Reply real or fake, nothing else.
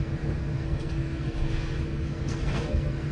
fake